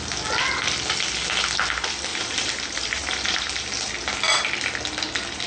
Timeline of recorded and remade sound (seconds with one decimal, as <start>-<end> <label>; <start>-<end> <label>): 0.0-2.1 recorded; 2.1-3.7 remade; 3.7-5.5 recorded